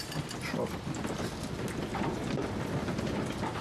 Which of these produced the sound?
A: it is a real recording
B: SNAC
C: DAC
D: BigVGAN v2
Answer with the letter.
A